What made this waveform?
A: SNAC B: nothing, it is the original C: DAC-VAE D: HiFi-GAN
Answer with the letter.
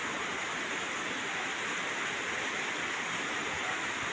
B